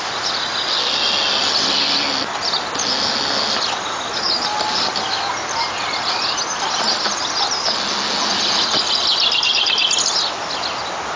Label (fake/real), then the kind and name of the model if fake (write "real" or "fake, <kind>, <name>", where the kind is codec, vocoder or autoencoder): real